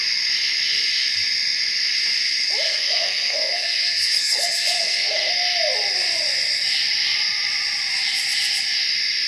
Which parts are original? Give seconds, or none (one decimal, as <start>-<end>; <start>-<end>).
0.0-2.7; 5.3-9.3